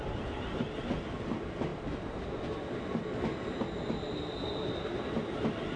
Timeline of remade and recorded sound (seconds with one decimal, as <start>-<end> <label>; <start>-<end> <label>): 0.0-5.8 recorded